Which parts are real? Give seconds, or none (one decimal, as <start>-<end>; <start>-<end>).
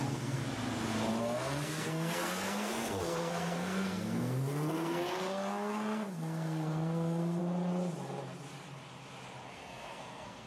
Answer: 0.4-1.2; 7.4-9.5